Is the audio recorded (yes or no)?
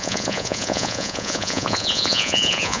no